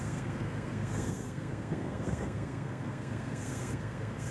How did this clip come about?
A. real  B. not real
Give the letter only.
B